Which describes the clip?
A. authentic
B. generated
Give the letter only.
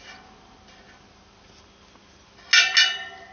A